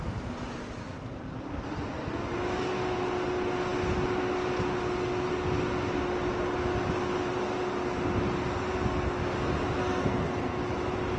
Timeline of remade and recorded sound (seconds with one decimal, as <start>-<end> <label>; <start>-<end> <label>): 0.0-9.8 recorded; 9.8-10.6 remade; 10.6-11.2 recorded

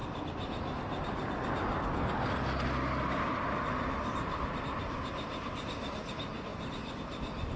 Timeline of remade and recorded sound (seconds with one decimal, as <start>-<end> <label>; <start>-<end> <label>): 0.0-7.6 recorded

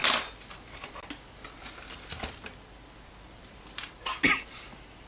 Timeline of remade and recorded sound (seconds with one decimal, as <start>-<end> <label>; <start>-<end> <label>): 0.0-5.1 recorded